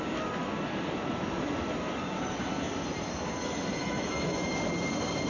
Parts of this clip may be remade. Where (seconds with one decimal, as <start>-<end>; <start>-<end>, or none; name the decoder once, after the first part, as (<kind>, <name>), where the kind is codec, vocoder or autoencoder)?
3.8-4.5 (autoencoder, DAC-VAE)